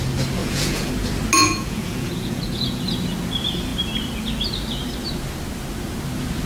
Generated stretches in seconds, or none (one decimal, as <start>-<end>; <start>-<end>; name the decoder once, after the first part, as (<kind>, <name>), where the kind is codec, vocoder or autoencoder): 0.4-0.9 (vocoder, Vocos); 1.4-2.8